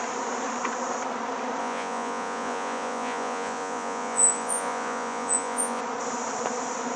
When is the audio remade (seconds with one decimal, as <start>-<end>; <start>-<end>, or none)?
1.6-5.8